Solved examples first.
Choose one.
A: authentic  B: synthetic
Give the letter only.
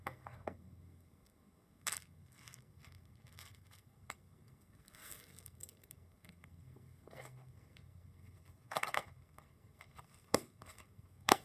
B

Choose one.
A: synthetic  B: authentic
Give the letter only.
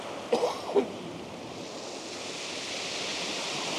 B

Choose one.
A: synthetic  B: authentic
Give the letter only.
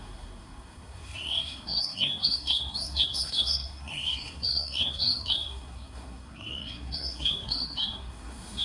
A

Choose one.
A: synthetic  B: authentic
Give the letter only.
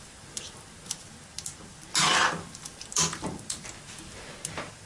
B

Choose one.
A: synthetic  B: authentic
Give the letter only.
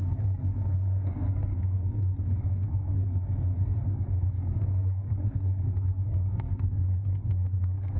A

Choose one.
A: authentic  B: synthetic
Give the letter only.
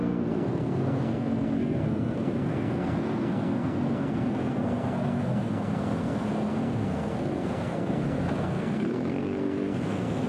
B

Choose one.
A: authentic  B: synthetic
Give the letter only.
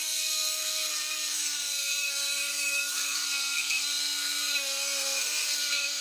B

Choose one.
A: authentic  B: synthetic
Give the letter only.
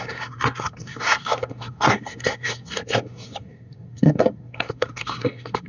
B